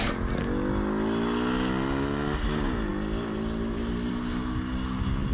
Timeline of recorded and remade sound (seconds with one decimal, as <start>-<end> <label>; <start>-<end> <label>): 0.0-5.3 recorded